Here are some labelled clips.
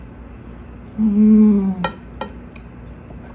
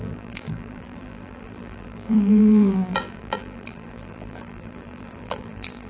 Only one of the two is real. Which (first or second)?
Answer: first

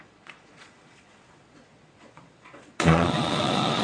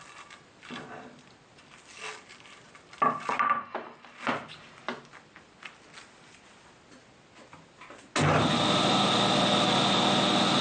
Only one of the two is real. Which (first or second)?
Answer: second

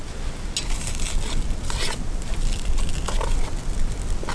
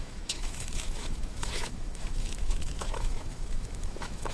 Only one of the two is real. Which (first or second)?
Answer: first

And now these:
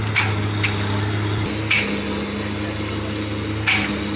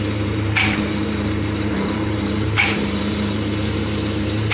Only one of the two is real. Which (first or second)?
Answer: first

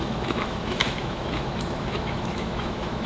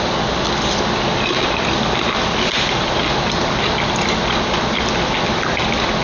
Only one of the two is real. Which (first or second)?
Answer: second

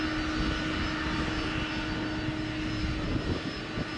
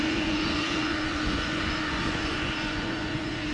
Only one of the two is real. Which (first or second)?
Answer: first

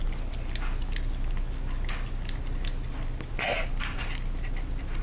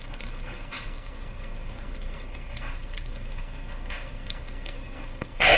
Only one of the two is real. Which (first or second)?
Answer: first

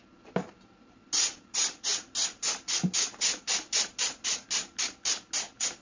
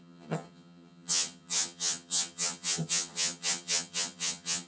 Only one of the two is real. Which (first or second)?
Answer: first